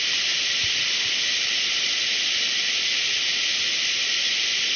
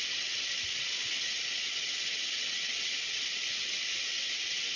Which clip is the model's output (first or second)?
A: second